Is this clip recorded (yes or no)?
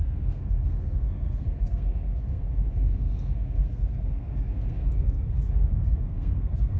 no